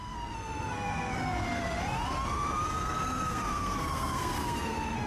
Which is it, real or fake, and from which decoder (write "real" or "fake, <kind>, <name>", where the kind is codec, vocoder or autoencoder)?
fake, codec, SNAC